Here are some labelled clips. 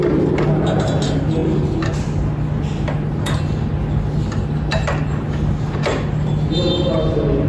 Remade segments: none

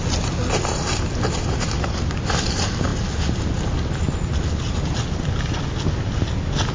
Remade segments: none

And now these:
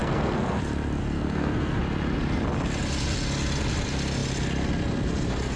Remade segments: 0.0-0.6; 1.0-1.8

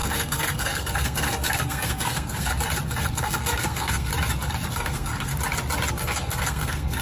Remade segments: 0.0-2.5; 3.0-4.1; 4.7-5.3; 5.9-7.0

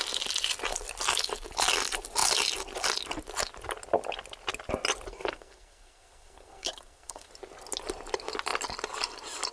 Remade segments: 5.1-7.3

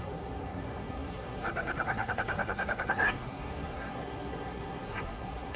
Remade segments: 0.0-5.6

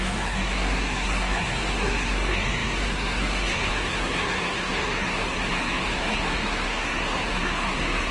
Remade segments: 0.0-8.1

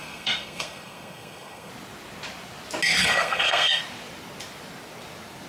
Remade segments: 0.0-1.7; 3.0-3.8